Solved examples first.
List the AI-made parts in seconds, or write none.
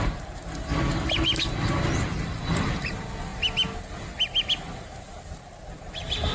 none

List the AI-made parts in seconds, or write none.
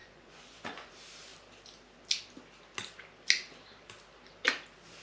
0.0-0.9 (vocoder, Vocos)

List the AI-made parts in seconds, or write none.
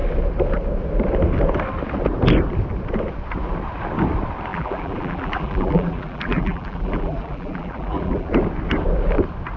4.5-8.3 (vocoder, BigVGAN v2)